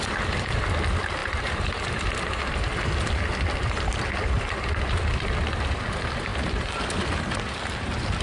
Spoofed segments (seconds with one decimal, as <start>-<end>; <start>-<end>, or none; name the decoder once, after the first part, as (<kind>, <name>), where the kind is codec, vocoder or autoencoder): 0.0-8.2 (vocoder, BigVGAN v2)